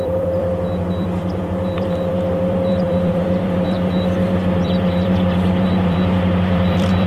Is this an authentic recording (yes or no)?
no